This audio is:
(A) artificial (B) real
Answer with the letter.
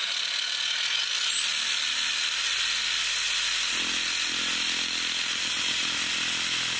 B